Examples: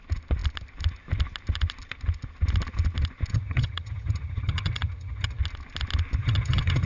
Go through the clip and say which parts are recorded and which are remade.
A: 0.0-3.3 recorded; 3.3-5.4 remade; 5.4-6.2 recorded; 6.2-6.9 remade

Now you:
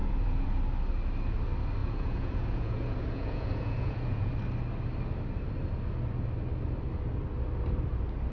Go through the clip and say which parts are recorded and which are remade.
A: 0.0-0.6 remade; 0.6-1.8 recorded; 1.8-4.3 remade; 4.3-8.3 recorded

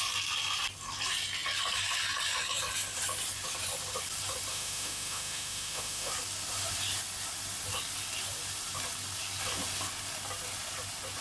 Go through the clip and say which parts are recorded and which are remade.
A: 0.0-4.5 recorded; 4.5-6.1 remade; 6.1-11.2 recorded

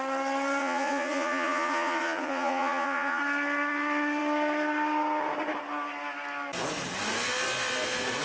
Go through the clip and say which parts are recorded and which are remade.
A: 0.0-0.6 recorded; 0.6-3.2 remade; 3.2-8.2 recorded